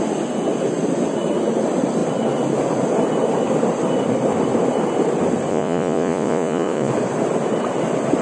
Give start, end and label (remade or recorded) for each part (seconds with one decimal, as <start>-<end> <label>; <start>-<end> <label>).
0.0-5.5 recorded; 5.5-6.9 remade; 6.9-8.2 recorded